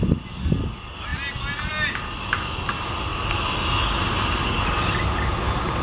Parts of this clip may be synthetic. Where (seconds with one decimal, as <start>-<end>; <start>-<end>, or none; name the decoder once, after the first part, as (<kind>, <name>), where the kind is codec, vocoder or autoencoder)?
none